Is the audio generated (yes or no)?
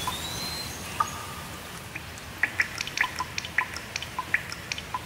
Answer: no